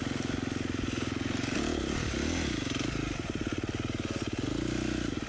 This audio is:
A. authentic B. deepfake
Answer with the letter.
A